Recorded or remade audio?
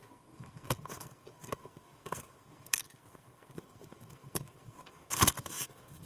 remade